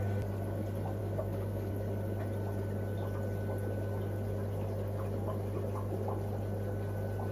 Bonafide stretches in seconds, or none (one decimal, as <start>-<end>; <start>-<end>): 0.0-1.0; 1.7-7.3